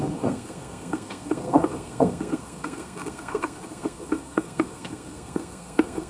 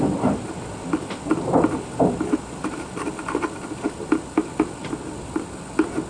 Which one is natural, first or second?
second